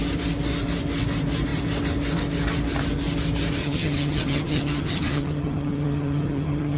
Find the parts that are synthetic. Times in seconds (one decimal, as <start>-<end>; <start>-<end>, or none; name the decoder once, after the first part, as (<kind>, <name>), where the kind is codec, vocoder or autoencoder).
3.6-6.8 (vocoder, HiFi-GAN)